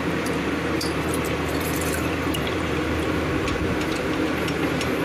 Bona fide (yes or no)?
no